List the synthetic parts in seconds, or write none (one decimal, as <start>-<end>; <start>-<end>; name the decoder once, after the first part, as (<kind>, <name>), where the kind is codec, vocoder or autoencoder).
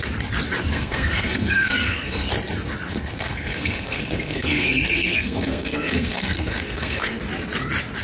0.7-2.3 (codec, SNAC); 2.9-7.2